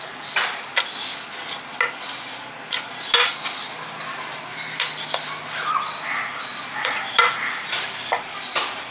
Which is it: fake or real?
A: real